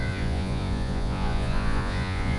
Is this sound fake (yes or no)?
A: yes